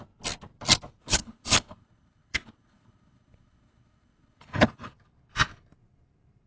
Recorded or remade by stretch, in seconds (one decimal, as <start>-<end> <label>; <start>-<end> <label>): 0.0-1.0 recorded; 1.0-4.9 remade; 4.9-6.5 recorded